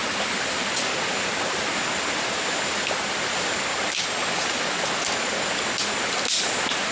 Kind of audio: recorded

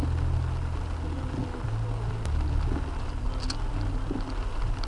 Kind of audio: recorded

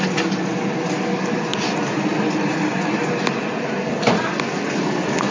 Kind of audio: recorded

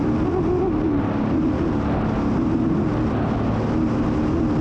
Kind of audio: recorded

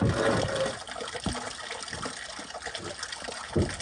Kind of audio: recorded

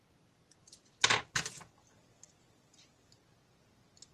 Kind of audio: recorded